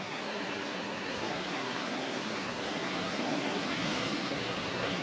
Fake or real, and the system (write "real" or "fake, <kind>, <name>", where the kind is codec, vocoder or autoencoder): fake, codec, SNAC